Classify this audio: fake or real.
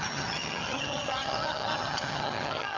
fake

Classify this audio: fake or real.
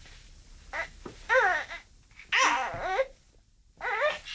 real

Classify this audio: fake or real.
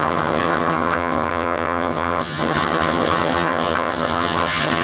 fake